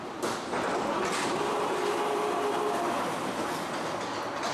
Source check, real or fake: real